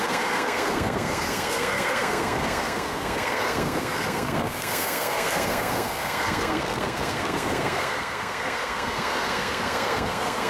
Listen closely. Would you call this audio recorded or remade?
remade